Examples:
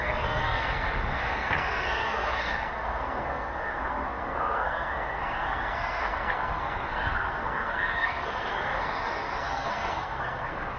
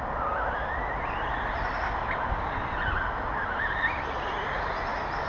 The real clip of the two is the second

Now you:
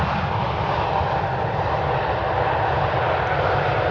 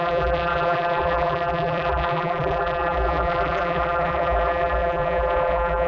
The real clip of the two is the first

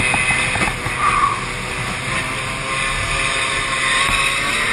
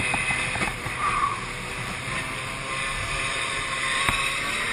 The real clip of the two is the first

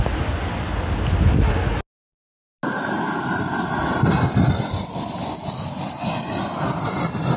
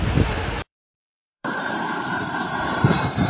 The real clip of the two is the first